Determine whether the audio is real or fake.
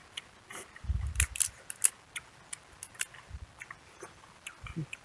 real